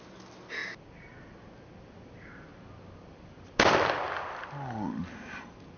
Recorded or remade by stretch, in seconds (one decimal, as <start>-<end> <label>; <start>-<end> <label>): 0.0-5.8 recorded